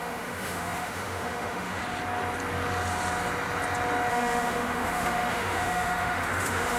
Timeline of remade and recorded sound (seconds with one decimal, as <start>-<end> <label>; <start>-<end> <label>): 0.0-1.8 remade; 1.8-4.1 recorded; 4.1-6.8 remade